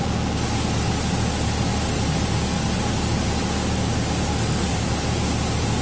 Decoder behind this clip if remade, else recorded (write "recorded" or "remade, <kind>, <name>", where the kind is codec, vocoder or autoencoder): recorded